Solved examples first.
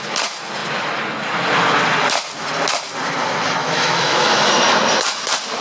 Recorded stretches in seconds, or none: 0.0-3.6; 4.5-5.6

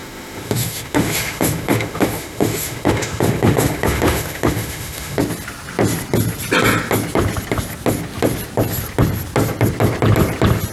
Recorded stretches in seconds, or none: 5.2-10.7

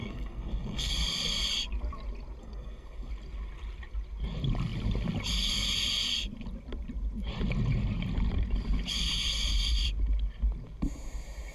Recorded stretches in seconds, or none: 0.9-2.4; 3.1-11.5

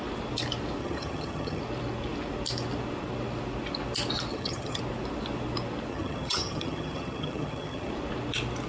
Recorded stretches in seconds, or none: 0.0-0.8; 1.6-4.3; 4.8-5.9; 7.9-8.7

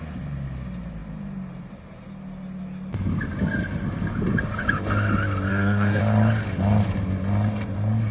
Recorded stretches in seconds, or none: 0.0-5.5; 6.0-8.1